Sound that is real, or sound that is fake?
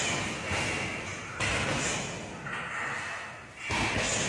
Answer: real